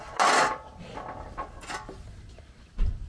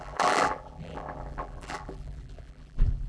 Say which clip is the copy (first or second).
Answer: second